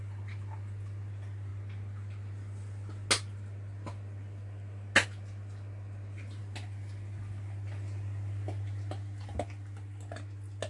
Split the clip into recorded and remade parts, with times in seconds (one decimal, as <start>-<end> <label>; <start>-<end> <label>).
0.0-10.7 recorded